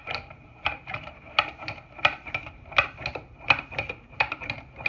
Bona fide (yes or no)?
no